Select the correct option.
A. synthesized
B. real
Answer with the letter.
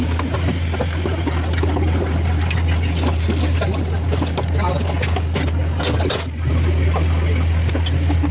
B